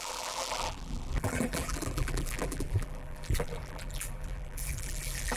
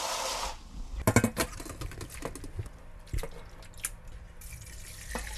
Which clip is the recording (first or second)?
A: second